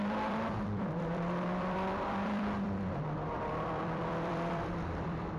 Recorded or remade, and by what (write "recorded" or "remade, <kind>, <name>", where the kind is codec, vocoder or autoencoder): remade, vocoder, BigVGAN v2